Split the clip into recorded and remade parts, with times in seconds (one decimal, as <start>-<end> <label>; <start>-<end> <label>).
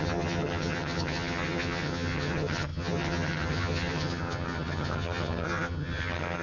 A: 0.0-6.4 remade